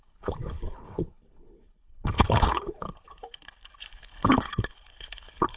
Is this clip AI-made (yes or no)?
yes